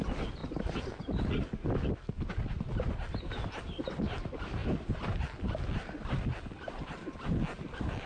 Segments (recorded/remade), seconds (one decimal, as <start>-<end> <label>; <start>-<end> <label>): 0.0-8.1 recorded